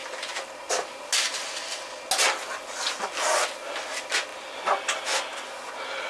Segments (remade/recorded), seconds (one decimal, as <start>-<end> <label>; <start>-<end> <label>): 0.0-6.1 recorded